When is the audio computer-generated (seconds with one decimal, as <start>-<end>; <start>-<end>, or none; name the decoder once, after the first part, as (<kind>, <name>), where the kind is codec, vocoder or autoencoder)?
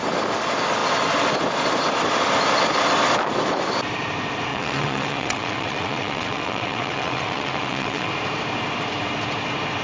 4.5-8.1 (vocoder, WaveNeXt)